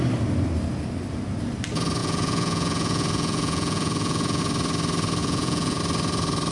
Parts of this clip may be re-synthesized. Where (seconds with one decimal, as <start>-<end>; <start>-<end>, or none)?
2.0-4.4; 5.2-5.8